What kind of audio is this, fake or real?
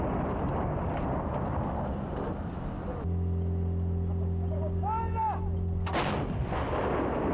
real